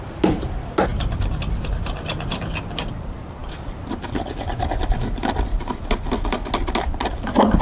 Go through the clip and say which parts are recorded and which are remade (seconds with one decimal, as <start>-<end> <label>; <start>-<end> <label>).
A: 0.0-7.6 recorded